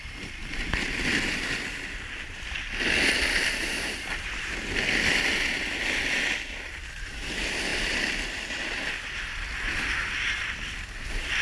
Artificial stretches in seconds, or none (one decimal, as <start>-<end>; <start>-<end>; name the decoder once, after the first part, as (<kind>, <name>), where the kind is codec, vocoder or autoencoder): none